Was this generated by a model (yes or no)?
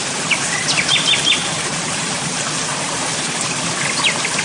no